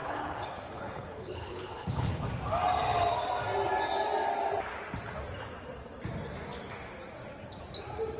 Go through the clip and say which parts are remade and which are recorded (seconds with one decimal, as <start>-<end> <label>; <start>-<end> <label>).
0.0-2.3 remade; 2.3-8.2 recorded